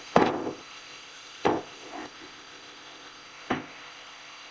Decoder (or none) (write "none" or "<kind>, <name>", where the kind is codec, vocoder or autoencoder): codec, ZipCodec